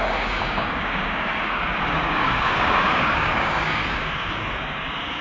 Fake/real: fake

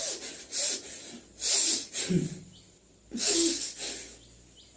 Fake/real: real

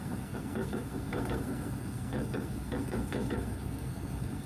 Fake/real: fake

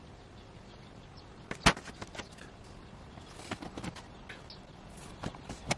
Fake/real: real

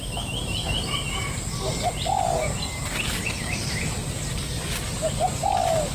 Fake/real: real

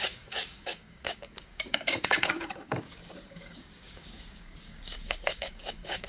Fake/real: fake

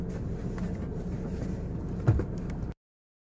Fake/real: fake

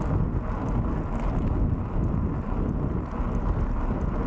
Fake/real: real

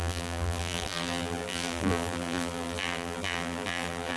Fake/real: fake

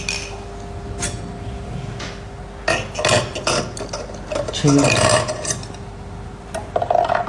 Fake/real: real